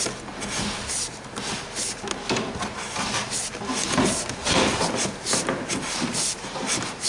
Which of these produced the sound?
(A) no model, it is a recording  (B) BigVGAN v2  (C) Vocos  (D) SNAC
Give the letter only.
A